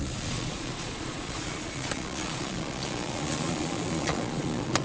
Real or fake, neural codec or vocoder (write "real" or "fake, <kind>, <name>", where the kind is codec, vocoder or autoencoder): fake, vocoder, Vocos